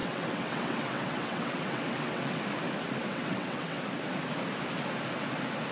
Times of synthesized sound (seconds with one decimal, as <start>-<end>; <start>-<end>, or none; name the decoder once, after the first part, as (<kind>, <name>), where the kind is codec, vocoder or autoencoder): 0.0-2.4 (vocoder, WaveNeXt); 3.1-3.8